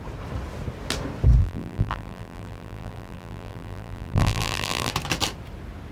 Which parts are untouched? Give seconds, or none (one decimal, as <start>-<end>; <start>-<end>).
0.0-1.4; 4.9-5.9